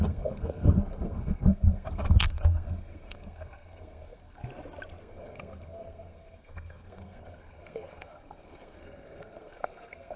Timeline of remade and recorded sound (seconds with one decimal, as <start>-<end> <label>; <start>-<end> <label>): 0.0-4.4 remade; 4.4-5.0 recorded; 5.0-10.2 remade